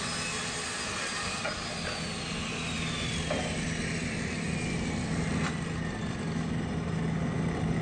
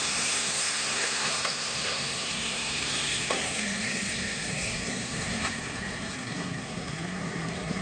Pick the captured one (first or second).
first